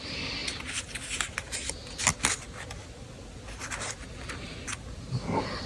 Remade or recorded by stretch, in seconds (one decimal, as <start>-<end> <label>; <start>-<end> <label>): 0.0-5.7 recorded